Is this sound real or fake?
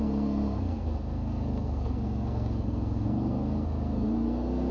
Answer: fake